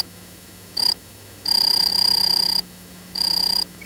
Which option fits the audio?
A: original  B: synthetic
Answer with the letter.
B